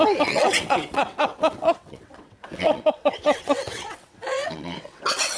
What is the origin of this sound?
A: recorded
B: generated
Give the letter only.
B